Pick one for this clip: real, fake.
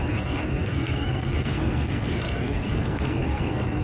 fake